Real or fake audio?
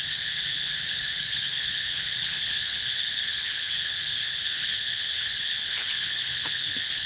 fake